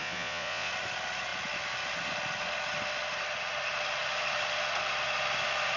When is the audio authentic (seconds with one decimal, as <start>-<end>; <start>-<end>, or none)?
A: 0.7-5.8